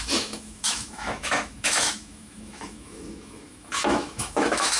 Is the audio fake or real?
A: fake